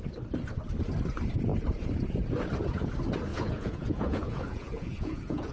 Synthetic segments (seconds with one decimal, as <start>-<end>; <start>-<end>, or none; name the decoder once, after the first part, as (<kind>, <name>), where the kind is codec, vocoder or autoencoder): 3.3-5.5 (vocoder, Vocos)